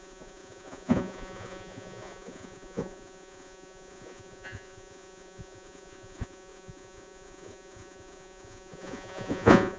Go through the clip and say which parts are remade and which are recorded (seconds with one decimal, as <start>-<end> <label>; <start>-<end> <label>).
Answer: 0.0-9.8 remade